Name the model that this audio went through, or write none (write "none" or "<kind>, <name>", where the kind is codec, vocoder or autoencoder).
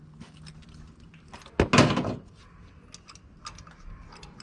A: none